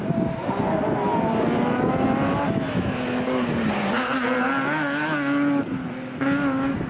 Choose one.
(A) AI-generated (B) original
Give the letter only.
B